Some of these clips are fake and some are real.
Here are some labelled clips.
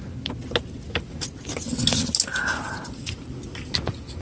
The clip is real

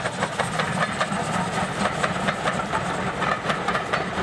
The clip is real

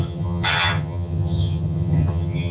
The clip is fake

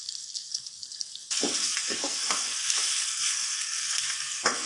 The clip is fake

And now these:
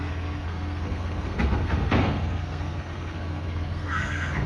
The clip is fake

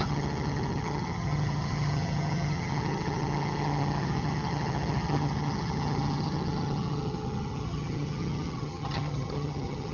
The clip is fake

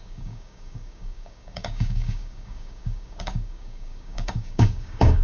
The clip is fake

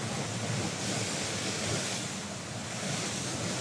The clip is real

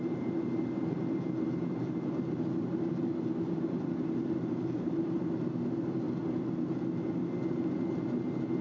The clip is real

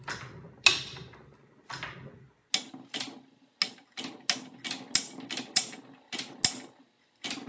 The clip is real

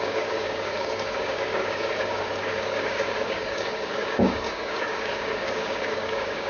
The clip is fake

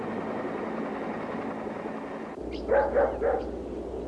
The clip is real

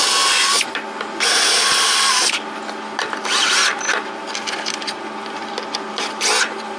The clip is real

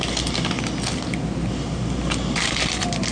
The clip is real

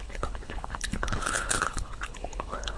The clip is fake